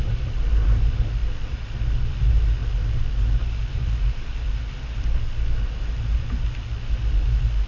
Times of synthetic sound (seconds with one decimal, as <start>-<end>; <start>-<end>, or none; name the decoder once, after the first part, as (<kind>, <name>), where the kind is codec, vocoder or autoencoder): none